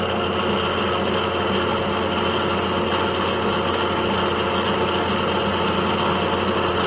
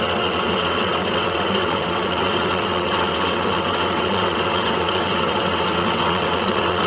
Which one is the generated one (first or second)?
second